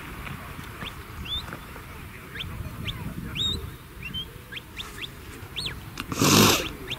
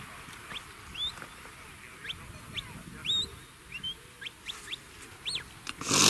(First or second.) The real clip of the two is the second